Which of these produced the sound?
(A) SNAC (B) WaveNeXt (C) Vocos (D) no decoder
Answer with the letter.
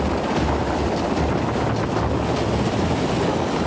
D